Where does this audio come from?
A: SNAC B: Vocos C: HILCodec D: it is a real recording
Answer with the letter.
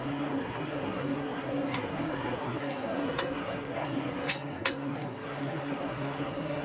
A